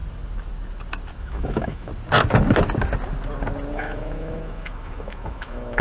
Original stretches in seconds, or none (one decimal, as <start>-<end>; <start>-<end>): 0.0-1.2; 1.9-3.7